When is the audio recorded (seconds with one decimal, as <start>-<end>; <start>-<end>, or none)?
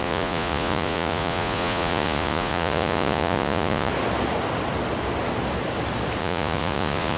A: 3.9-6.2